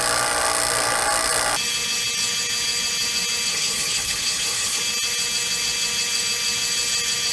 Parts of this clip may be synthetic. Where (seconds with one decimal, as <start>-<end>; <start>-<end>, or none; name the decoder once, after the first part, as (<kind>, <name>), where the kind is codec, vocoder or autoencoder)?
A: 3.5-4.8 (codec, HILCodec)